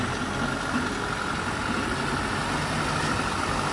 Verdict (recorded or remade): recorded